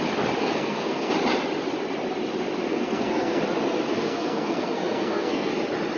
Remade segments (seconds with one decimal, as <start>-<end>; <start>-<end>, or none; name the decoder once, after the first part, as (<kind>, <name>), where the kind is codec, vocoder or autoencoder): 0.4-1.1 (codec, SNAC); 2.7-3.4; 3.9-5.5